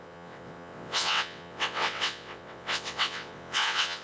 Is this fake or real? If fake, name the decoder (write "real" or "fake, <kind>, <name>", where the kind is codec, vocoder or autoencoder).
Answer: fake, vocoder, WaveNeXt